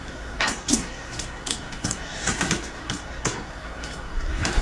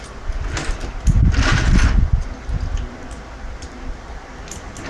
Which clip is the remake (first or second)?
first